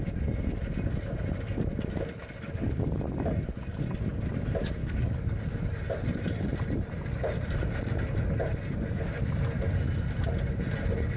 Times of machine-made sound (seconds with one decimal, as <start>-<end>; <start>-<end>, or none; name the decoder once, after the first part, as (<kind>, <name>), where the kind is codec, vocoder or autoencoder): 4.8-5.4 (codec, DAC)